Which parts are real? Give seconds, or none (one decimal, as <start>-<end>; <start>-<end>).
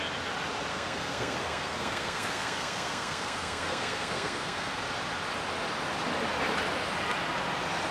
0.0-0.7; 4.8-7.9